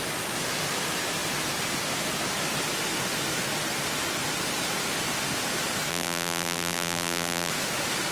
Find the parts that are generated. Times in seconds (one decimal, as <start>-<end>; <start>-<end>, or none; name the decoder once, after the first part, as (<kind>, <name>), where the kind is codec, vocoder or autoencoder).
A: 5.9-7.5 (vocoder, BigVGAN v2)